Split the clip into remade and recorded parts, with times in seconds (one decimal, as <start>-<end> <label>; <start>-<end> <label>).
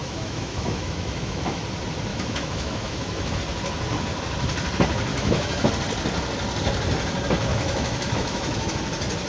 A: 0.0-1.6 remade; 1.6-2.1 recorded; 2.1-3.4 remade; 3.4-5.1 recorded; 5.1-5.7 remade; 5.7-7.5 recorded; 7.5-8.7 remade; 8.7-9.3 recorded